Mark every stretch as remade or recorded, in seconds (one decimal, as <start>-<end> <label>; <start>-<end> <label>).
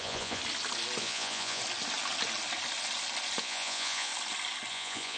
0.0-0.4 remade; 0.4-1.0 recorded; 1.0-1.6 remade; 1.6-3.4 recorded; 3.4-4.1 remade; 4.1-4.7 recorded; 4.7-5.2 remade